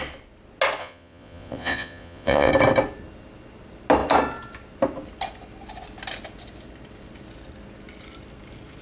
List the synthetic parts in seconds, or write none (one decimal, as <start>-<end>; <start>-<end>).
0.8-2.5